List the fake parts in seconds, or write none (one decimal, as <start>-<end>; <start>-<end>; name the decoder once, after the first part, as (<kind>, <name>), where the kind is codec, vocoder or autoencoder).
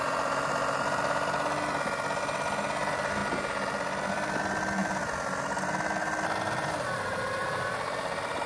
none